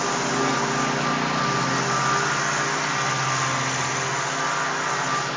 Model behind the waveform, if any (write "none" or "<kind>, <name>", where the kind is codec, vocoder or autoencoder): none